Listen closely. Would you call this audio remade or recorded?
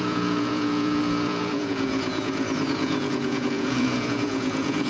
remade